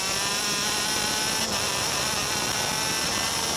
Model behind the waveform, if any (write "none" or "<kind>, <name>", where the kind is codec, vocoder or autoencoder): none